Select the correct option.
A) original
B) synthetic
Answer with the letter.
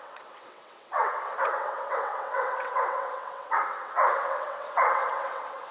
B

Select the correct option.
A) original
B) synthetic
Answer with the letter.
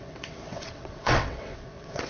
B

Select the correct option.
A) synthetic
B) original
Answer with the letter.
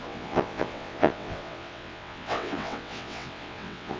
A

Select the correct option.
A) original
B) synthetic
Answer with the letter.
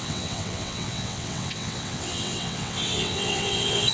B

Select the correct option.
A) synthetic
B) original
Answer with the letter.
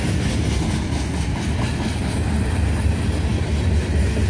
B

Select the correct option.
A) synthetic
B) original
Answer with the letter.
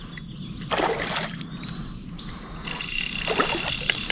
B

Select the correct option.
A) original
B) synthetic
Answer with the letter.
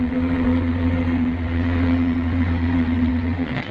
B